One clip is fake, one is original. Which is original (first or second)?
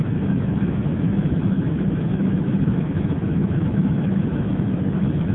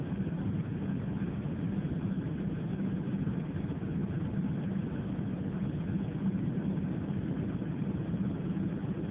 second